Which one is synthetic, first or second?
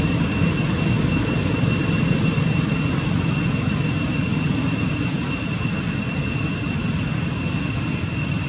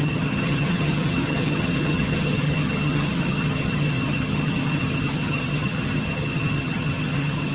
second